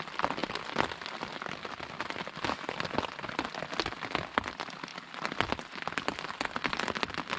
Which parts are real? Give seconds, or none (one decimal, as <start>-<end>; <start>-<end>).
0.0-7.4